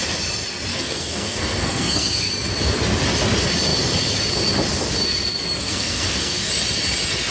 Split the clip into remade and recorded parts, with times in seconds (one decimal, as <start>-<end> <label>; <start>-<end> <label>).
0.0-0.7 recorded; 0.7-2.3 remade; 2.3-5.6 recorded; 5.6-6.5 remade; 6.5-7.3 recorded